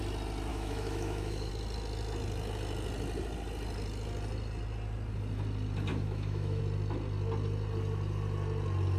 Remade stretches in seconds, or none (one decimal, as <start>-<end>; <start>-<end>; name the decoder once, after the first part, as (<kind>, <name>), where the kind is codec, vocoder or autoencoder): 0.5-1.5 (autoencoder, DAC-VAE); 5.9-6.6